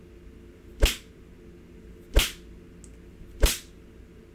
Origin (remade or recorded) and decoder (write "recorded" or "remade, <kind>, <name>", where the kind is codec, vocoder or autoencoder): recorded